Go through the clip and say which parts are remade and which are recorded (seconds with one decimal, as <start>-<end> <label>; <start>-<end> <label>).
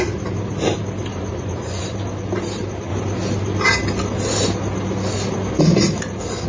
0.0-1.1 recorded; 1.1-1.8 remade; 1.8-6.5 recorded